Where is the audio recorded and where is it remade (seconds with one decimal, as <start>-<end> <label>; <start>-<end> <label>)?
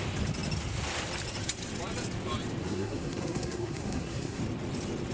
0.0-2.6 recorded; 2.6-4.4 remade; 4.4-5.1 recorded